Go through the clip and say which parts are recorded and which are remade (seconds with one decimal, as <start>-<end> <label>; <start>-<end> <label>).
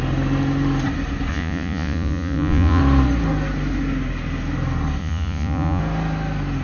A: 0.0-1.3 recorded; 1.3-2.8 remade; 2.8-5.0 recorded; 5.0-5.8 remade; 5.8-6.6 recorded